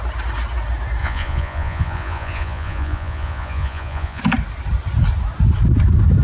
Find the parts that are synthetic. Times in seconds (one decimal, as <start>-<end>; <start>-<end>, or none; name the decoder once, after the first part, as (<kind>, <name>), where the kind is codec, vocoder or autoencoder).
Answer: 1.0-4.2 (vocoder, Vocos)